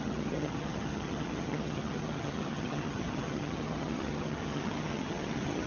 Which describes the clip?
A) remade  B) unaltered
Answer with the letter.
A